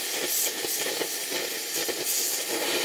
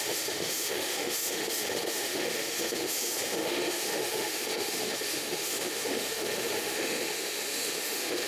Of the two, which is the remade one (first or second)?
second